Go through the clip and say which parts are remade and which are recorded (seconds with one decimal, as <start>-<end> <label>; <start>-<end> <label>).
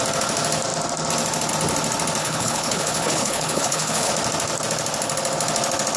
0.0-2.2 recorded; 2.2-4.1 remade; 4.1-6.0 recorded